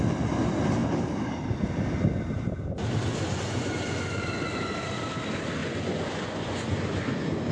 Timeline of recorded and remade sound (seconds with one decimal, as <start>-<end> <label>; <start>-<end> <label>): 0.0-3.1 recorded; 3.1-4.4 remade; 4.4-5.6 recorded; 5.6-7.5 remade

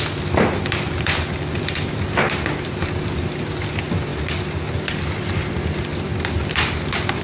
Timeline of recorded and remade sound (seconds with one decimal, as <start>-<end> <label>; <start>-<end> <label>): 0.0-7.2 recorded

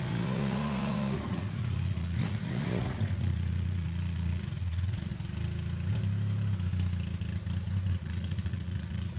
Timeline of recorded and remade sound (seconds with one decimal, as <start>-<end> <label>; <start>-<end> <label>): 0.0-5.1 remade; 5.1-7.9 recorded; 7.9-9.2 remade

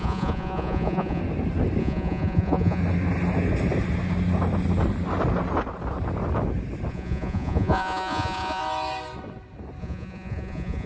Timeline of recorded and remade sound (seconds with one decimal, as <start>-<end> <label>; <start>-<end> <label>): 0.0-1.2 remade; 1.2-1.8 recorded; 1.8-2.8 remade; 2.8-6.9 recorded; 6.9-8.6 remade; 8.6-9.8 recorded; 9.8-10.9 remade

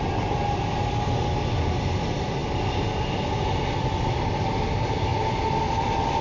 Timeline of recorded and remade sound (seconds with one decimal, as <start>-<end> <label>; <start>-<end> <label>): 0.0-6.2 recorded

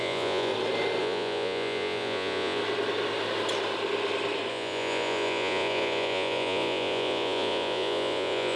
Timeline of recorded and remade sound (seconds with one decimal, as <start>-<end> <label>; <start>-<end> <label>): 0.0-0.5 remade; 0.5-1.0 recorded; 1.0-2.6 remade; 2.6-4.5 recorded; 4.5-8.6 remade

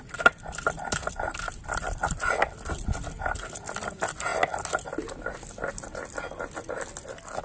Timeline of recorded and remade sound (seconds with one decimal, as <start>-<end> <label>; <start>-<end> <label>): 0.0-7.4 recorded